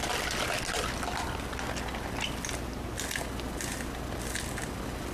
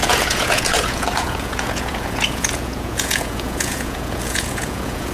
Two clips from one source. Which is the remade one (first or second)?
second